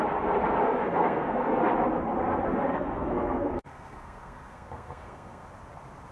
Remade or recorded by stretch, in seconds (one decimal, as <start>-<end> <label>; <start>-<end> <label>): 0.0-0.6 recorded; 0.6-1.6 remade; 1.6-2.7 recorded; 2.7-5.5 remade; 5.5-6.1 recorded